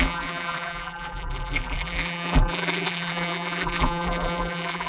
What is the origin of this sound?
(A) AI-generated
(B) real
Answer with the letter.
A